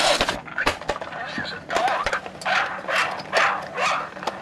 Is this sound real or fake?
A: real